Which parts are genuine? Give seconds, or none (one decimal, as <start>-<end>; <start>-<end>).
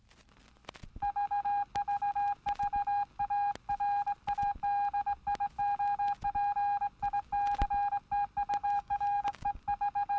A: 0.0-8.6; 9.6-10.2